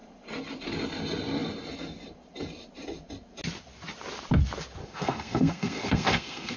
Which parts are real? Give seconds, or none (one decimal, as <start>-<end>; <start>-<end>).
0.0-4.8